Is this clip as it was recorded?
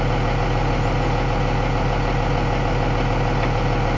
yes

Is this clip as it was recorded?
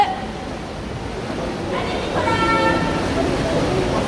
yes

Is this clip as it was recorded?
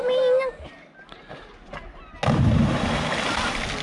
yes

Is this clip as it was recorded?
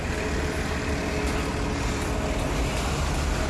yes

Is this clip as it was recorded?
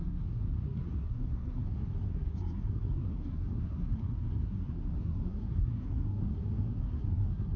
no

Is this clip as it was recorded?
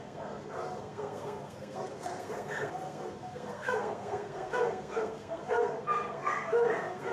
no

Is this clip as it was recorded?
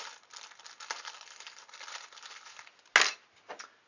yes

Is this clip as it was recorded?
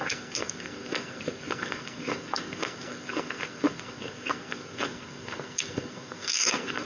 no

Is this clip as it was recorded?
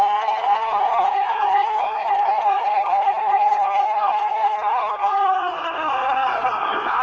no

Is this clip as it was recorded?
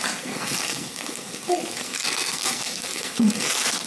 no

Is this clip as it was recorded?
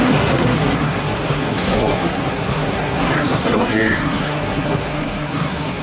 no